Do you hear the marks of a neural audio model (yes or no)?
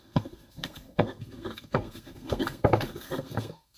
yes